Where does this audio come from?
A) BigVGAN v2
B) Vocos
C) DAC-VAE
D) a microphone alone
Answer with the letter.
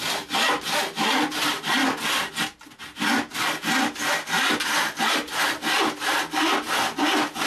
D